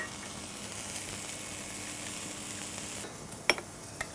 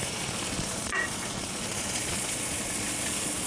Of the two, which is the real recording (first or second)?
first